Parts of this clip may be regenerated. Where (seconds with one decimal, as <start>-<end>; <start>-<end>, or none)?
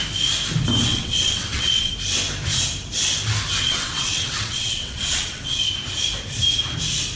0.9-1.9; 3.6-5.7